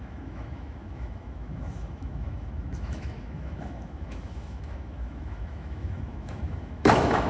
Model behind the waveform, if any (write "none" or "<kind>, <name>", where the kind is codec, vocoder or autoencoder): autoencoder, DAC-VAE